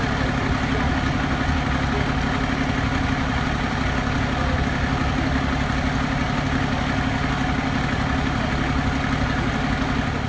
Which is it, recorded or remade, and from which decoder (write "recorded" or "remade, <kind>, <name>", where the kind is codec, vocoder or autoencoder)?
recorded